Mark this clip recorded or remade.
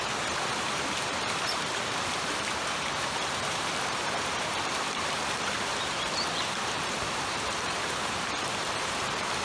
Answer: remade